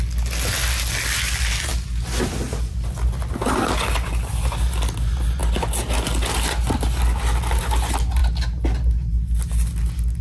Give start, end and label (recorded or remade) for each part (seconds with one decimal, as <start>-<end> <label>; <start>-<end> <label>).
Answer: 0.0-10.2 recorded